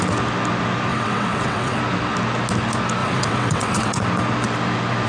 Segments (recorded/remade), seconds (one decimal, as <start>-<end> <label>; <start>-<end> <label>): 0.0-0.9 recorded; 0.9-1.8 remade; 1.8-3.0 recorded; 3.0-4.0 remade; 4.0-5.1 recorded